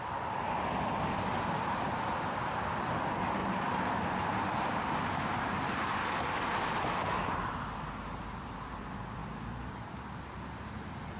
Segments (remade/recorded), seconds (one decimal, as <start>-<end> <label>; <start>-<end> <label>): 0.0-11.2 recorded